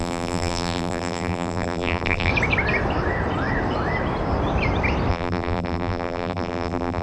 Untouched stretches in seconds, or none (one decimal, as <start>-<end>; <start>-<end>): 2.3-5.1